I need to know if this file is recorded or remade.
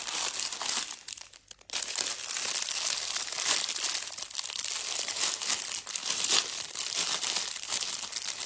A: recorded